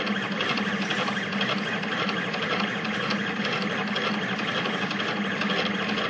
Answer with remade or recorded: recorded